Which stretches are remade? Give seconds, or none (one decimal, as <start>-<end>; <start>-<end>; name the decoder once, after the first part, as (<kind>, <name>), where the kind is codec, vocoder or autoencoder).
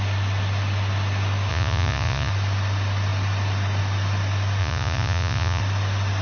1.5-2.3 (vocoder, Vocos); 4.6-5.6